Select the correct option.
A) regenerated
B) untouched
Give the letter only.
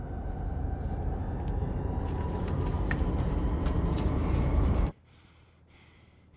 A